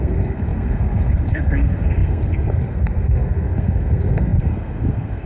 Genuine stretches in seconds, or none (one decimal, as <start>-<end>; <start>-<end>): none